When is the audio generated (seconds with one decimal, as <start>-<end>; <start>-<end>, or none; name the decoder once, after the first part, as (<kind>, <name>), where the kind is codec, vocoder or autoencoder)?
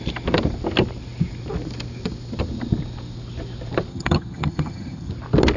3.9-5.1 (vocoder, HiFi-GAN)